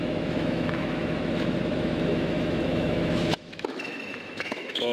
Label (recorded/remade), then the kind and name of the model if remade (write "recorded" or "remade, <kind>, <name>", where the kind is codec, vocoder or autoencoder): remade, autoencoder, DAC-VAE